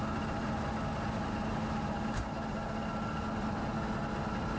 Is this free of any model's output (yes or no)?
yes